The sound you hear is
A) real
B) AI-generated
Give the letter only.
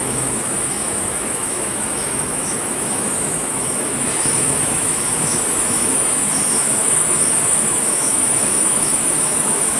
B